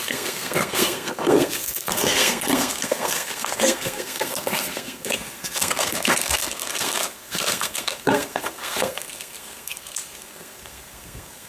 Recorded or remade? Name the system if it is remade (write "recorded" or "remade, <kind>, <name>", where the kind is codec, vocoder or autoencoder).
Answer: remade, codec, SNAC